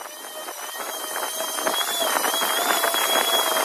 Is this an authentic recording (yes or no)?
yes